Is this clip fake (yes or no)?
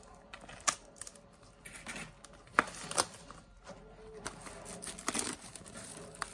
no